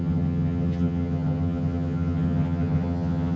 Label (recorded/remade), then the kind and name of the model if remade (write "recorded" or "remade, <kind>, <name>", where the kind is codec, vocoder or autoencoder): remade, vocoder, HiFi-GAN